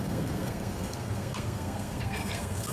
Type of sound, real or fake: fake